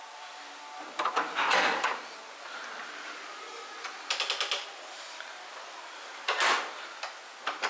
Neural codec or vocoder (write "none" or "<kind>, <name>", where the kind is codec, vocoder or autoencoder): none